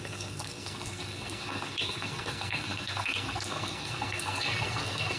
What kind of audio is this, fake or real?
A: fake